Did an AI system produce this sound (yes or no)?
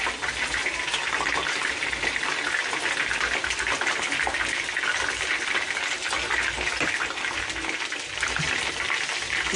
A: no